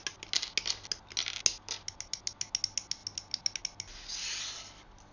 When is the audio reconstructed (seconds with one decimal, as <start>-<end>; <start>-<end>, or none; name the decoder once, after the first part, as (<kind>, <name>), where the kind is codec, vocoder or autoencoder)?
none